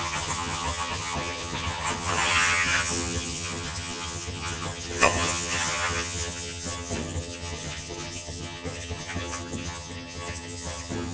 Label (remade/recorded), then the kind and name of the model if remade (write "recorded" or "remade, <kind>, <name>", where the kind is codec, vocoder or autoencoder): remade, vocoder, HiFi-GAN